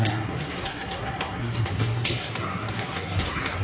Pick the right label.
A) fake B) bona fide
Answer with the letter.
A